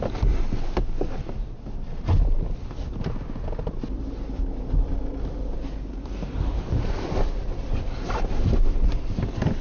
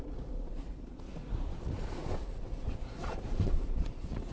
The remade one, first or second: second